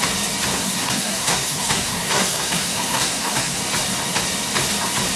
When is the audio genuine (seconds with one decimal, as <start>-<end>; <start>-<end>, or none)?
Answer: 0.0-0.5; 3.6-5.2